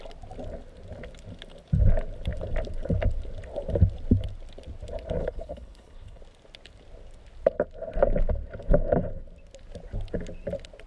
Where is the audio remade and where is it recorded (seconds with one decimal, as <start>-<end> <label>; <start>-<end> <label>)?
0.0-5.2 recorded; 5.2-6.2 remade; 6.2-10.9 recorded